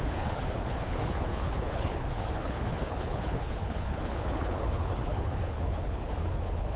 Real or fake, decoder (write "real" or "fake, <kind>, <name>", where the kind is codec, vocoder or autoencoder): fake, codec, HILCodec